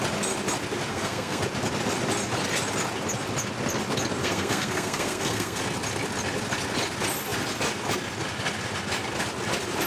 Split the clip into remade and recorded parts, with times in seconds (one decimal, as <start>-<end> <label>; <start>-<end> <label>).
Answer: 0.0-0.9 recorded; 0.9-1.4 remade; 1.4-4.2 recorded; 4.2-5.6 remade; 5.6-9.9 recorded